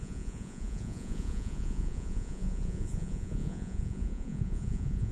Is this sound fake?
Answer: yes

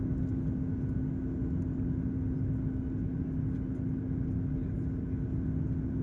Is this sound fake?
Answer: no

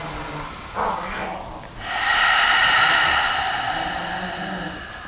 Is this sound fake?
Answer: no